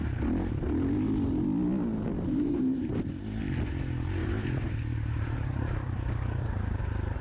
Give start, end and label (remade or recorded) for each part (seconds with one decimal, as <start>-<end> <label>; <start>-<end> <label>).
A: 0.0-2.1 recorded; 2.1-3.1 remade; 3.1-4.2 recorded; 4.2-6.8 remade; 6.8-7.2 recorded